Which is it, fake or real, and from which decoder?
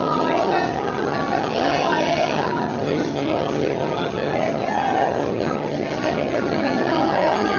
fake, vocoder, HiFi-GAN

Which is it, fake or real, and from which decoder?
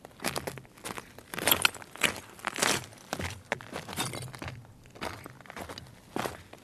real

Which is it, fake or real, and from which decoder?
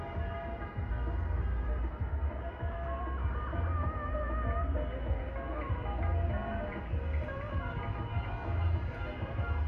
real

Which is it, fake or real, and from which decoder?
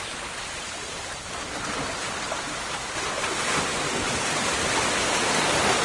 real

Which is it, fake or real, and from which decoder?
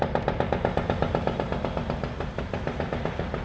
real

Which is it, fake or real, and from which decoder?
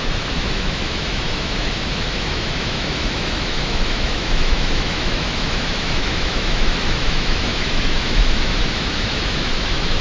fake, autoencoder, DAC-VAE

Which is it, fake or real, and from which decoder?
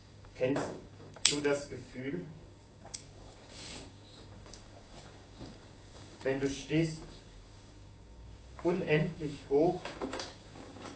fake, codec, DAC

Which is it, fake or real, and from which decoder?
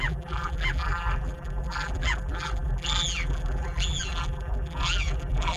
fake, vocoder, BigVGAN v2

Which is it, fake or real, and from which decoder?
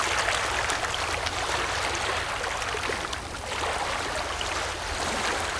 real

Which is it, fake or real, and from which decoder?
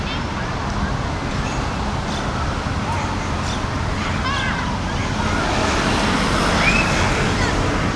real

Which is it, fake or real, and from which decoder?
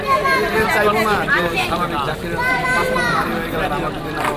real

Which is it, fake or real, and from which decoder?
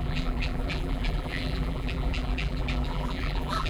fake, vocoder, BigVGAN v2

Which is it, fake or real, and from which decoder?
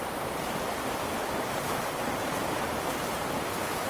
real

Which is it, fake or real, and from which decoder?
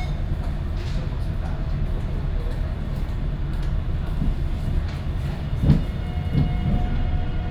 real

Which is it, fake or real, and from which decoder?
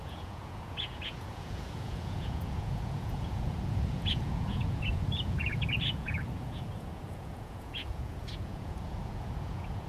fake, vocoder, Vocos